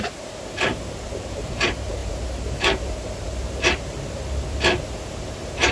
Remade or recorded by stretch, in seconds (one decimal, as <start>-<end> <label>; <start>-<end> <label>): 0.0-2.0 remade; 2.0-5.3 recorded; 5.3-5.7 remade

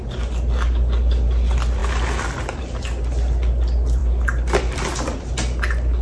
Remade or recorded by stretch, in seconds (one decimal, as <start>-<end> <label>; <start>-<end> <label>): 0.0-6.0 recorded

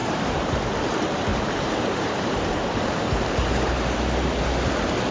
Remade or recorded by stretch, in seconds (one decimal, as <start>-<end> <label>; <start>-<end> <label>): 0.0-0.6 remade; 0.6-1.3 recorded; 1.3-4.4 remade; 4.4-5.1 recorded

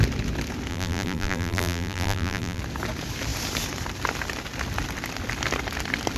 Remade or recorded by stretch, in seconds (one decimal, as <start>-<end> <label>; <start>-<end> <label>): 0.0-0.7 recorded; 0.7-2.6 remade; 2.6-6.2 recorded

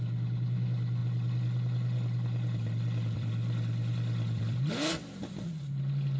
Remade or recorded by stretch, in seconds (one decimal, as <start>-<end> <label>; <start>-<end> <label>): 0.0-1.0 recorded; 1.0-4.7 remade; 4.7-6.2 recorded

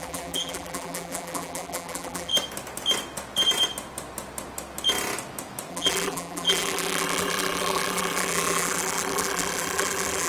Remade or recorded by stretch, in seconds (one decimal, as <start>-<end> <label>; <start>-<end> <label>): 0.0-2.3 remade; 2.3-5.7 recorded; 5.7-10.3 remade

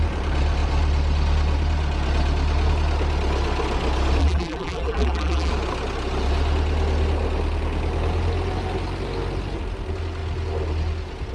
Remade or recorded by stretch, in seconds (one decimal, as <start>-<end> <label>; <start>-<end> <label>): 0.0-4.2 recorded; 4.2-5.5 remade; 5.5-11.3 recorded

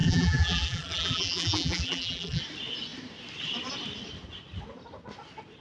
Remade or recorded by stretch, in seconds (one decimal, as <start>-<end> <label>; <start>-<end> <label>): 0.0-2.4 remade; 2.4-5.6 recorded